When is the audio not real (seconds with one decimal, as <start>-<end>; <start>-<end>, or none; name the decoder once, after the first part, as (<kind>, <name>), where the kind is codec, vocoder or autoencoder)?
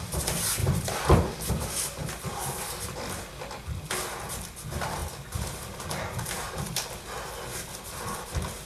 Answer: none